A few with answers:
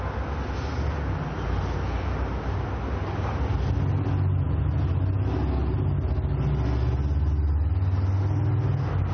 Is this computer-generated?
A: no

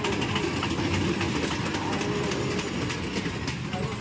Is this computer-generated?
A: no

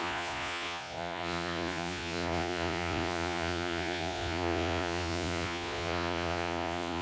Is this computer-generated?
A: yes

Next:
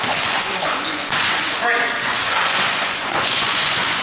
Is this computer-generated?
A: yes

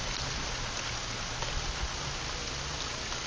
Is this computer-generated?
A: no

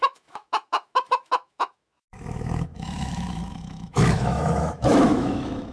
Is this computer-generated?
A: yes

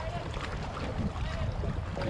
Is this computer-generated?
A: no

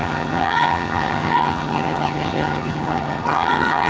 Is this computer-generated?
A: yes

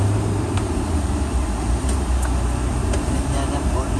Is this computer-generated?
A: yes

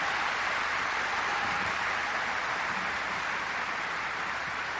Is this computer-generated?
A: yes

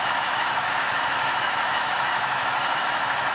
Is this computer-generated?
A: yes